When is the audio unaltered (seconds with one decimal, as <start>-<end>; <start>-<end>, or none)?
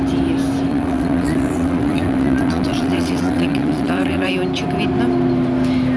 0.0-0.7; 4.3-6.0